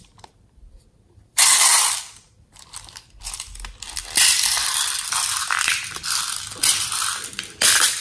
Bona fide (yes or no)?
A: no